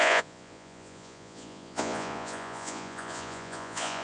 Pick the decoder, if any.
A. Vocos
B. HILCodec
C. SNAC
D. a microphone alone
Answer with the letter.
A